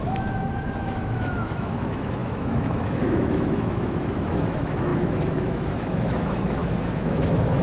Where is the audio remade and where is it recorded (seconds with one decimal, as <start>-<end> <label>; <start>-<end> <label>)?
0.0-7.6 remade